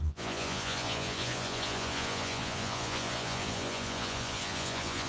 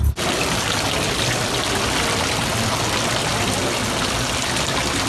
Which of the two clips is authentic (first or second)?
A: second